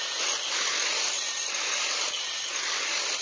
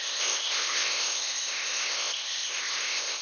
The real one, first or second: first